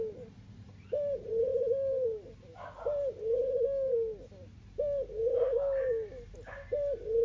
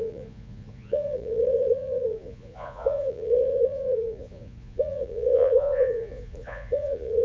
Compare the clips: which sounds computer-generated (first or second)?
second